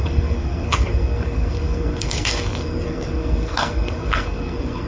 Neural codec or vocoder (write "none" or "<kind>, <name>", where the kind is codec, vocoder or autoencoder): codec, SNAC